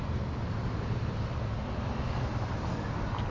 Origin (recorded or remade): recorded